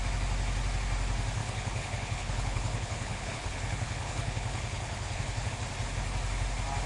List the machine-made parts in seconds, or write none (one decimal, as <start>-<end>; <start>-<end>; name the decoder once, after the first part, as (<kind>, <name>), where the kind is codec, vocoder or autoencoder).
1.4-5.5 (codec, HILCodec)